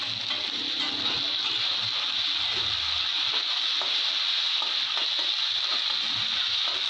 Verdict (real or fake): real